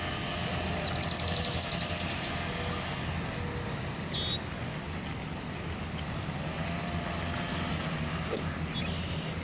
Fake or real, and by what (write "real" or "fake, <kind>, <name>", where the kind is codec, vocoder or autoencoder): real